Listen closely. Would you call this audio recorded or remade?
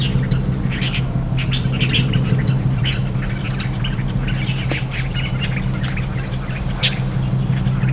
recorded